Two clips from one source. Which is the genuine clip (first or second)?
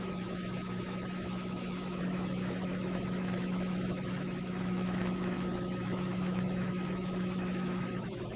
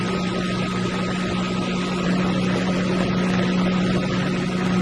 second